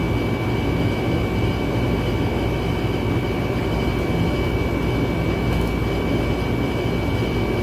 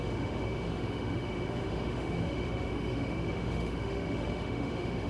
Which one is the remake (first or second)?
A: second